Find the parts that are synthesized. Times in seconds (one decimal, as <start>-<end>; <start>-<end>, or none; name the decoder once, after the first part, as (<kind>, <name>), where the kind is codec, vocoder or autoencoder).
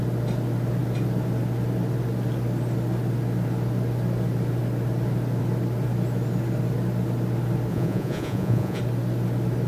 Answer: 7.7-8.8 (vocoder, Vocos)